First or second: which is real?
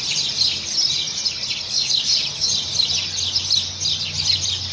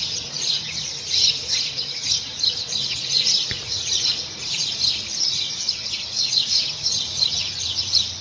first